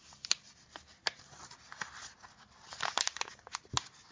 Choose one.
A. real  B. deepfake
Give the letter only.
A